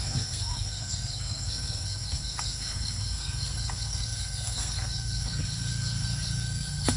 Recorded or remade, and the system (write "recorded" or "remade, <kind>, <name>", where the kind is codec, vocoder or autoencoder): remade, codec, SNAC